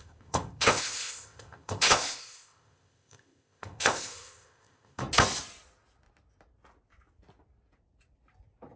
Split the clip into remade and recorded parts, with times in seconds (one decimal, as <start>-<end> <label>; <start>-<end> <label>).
0.0-5.0 remade; 5.0-8.8 recorded

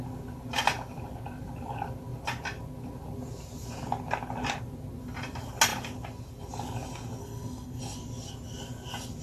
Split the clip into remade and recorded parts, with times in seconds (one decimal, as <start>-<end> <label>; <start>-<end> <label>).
0.0-7.2 recorded; 7.2-7.8 remade; 7.8-9.2 recorded